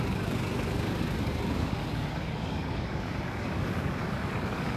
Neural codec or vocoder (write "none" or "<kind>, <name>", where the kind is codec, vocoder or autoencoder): codec, DAC